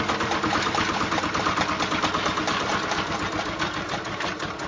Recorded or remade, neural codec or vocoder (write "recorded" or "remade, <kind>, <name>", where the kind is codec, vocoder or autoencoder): recorded